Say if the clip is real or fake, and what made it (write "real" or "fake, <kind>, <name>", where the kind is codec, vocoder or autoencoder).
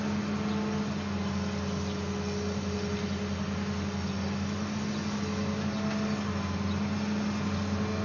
real